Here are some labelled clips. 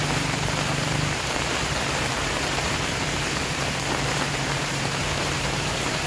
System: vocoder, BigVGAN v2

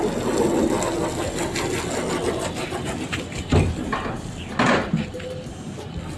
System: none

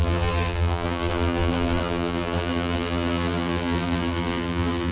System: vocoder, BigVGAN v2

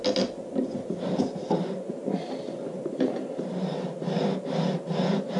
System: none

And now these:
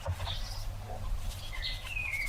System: vocoder, BigVGAN v2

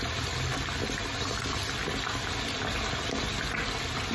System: none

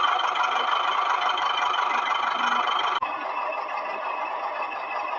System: none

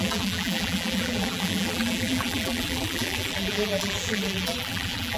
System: vocoder, BigVGAN v2